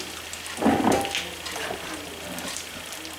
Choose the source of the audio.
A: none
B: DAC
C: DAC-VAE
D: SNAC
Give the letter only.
A